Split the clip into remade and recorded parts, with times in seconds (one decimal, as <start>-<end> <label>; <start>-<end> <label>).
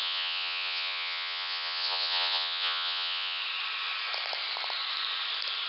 0.0-3.4 remade; 3.4-5.7 recorded